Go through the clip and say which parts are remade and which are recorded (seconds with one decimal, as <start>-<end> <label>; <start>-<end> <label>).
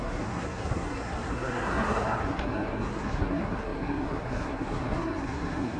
0.0-5.8 remade